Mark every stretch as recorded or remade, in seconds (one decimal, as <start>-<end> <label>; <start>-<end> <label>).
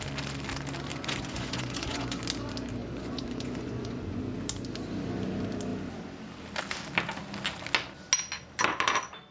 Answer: 0.0-0.9 recorded; 0.9-2.2 remade; 2.2-2.8 recorded; 2.8-4.2 remade; 4.2-9.3 recorded